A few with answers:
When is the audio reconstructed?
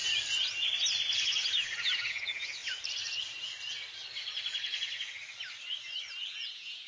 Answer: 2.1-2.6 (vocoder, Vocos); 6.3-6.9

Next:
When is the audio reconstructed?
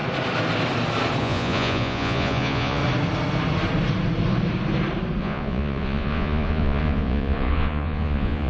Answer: 1.2-2.8 (vocoder, Vocos); 5.2-8.5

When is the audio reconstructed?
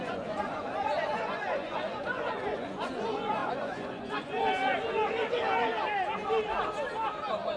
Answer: 0.0-4.6 (vocoder, Vocos)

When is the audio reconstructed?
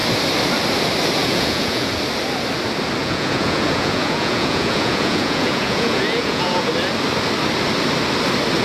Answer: 1.2-1.9 (vocoder, Vocos); 3.0-6.7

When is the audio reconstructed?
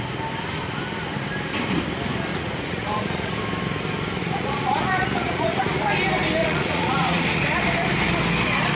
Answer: 2.3-3.4 (vocoder, Vocos); 4.2-5.8; 6.4-7.6